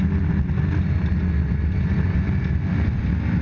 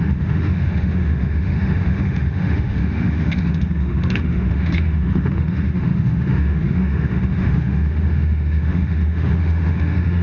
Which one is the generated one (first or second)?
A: second